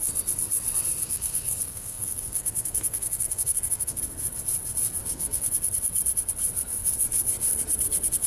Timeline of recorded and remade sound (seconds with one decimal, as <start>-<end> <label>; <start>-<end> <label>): 0.0-1.0 recorded; 1.0-4.0 remade; 4.0-5.0 recorded; 5.0-5.5 remade; 5.5-8.3 recorded